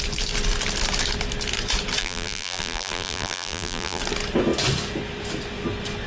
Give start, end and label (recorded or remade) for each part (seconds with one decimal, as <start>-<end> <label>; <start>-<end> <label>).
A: 0.0-2.0 recorded; 2.0-4.0 remade; 4.0-6.1 recorded